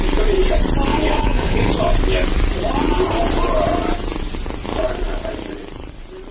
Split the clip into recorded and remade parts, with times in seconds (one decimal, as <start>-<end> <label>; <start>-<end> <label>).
0.0-0.9 recorded; 0.9-1.7 remade; 1.7-6.3 recorded